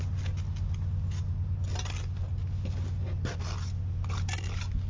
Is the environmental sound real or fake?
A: real